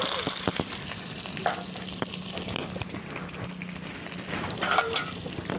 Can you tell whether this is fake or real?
real